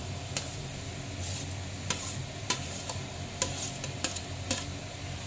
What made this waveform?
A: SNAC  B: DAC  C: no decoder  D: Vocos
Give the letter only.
C